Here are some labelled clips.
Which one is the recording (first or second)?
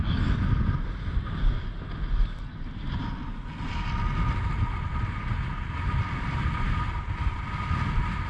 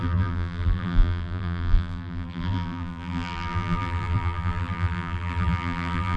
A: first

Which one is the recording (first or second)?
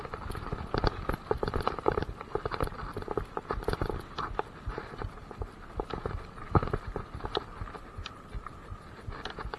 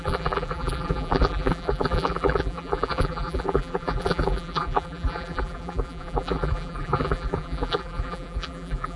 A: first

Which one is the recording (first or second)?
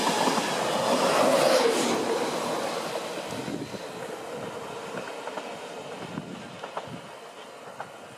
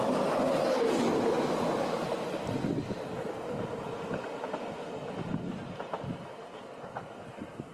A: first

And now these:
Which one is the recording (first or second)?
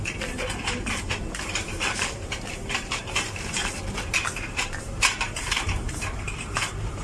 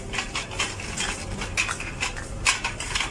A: second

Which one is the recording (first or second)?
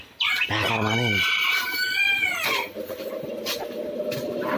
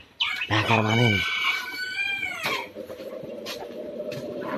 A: first